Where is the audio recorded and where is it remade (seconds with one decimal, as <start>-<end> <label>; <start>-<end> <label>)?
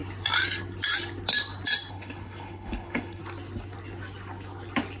0.0-1.9 recorded; 1.9-3.2 remade; 3.2-5.0 recorded